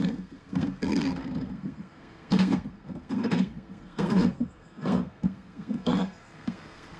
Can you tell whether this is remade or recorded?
remade